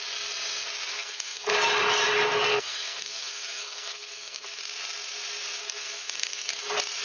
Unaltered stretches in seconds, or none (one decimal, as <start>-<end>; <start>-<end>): 0.0-0.9; 1.5-2.5; 4.6-5.6; 6.5-7.0

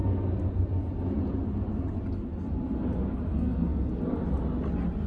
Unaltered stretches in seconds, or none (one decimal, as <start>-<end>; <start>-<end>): 0.0-3.3; 3.9-5.1